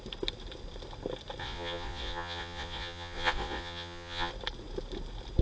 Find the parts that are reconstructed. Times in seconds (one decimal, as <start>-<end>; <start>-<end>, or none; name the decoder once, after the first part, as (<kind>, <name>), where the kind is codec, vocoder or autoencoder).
1.4-4.3 (vocoder, Vocos)